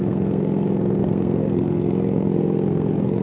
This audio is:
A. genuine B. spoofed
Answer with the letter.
B